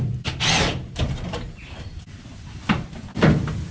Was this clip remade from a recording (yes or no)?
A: yes